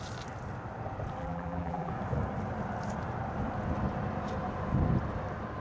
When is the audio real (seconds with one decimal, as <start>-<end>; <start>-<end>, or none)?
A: 0.0-1.2; 1.9-5.6